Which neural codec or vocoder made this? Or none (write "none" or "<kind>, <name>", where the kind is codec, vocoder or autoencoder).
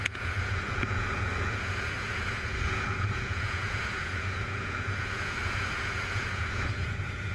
vocoder, Vocos